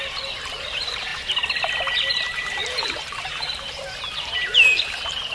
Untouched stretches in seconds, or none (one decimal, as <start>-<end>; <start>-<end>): 1.1-2.1